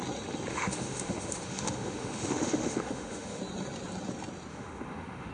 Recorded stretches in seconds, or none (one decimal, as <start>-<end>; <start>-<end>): 0.0-0.5; 3.4-4.5